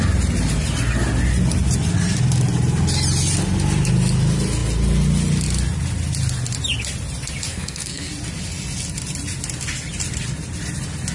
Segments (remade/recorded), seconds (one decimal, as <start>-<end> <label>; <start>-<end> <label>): 0.0-7.5 recorded; 7.5-8.1 remade; 8.1-11.1 recorded